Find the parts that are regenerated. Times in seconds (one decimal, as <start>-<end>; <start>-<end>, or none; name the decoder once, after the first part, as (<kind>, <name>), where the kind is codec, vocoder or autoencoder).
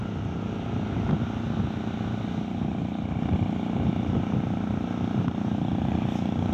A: none